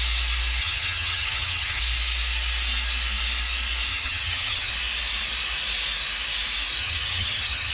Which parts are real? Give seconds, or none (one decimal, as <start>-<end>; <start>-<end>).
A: 0.0-0.6; 1.8-3.9; 4.7-6.8